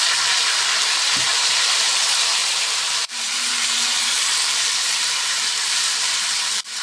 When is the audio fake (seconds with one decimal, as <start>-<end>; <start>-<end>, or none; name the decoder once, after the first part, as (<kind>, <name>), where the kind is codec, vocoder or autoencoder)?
0.0-6.8 (vocoder, BigVGAN v2)